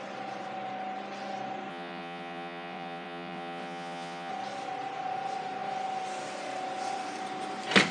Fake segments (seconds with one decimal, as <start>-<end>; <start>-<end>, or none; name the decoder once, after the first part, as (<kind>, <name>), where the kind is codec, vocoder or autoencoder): 1.7-4.3 (vocoder, WaveNeXt)